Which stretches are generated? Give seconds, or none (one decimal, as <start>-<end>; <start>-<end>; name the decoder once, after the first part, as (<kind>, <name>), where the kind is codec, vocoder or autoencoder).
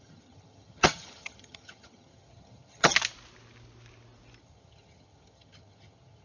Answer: 0.0-2.9 (vocoder, HiFi-GAN); 4.4-6.2